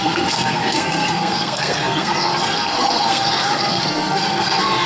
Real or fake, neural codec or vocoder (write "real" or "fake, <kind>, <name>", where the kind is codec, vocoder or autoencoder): fake, codec, SNAC